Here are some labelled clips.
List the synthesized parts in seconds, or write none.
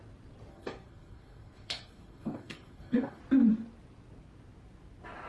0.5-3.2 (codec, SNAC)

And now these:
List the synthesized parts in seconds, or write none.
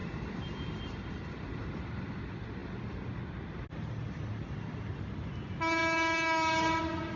none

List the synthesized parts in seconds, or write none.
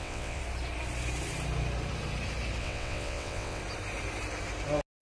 0.0-0.4 (vocoder, WaveNeXt); 2.6-3.6